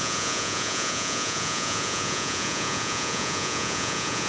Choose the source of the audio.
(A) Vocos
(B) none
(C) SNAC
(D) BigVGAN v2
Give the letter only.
A